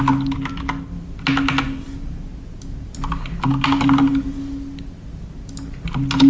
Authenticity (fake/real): real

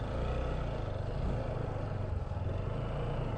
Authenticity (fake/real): real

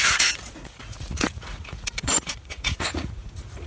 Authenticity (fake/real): fake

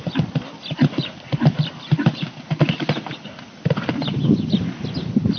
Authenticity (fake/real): real